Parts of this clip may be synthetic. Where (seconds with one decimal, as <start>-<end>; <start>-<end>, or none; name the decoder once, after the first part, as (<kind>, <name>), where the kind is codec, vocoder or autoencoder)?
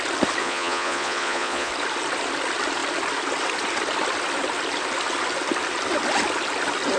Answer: 0.4-1.7 (vocoder, Vocos)